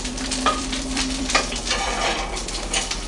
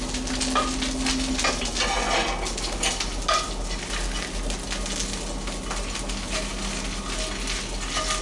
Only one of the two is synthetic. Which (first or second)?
first